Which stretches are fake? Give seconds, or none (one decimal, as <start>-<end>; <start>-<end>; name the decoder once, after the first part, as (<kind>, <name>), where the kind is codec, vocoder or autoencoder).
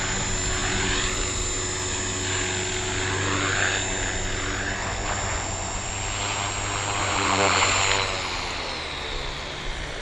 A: 4.8-5.9 (vocoder, Vocos); 7.0-7.8